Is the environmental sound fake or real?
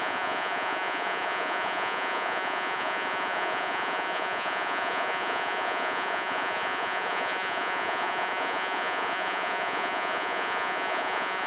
fake